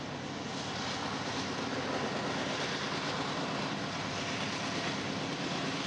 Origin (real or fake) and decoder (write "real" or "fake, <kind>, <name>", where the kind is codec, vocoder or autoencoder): real